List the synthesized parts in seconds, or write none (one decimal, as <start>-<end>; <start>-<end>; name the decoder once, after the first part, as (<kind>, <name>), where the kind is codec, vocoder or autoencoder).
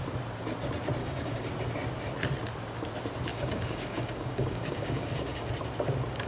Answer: 1.0-1.5 (codec, DAC); 3.3-5.5